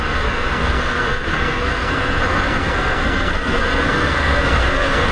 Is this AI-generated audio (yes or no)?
yes